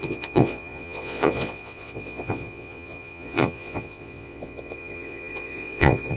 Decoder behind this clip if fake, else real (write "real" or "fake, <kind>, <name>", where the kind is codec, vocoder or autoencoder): fake, vocoder, Vocos